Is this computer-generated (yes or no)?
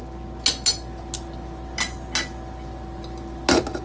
no